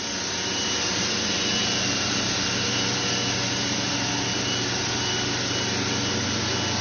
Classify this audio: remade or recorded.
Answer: recorded